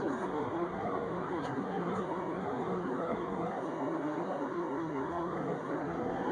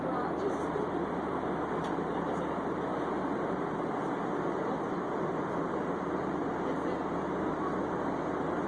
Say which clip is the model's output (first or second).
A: first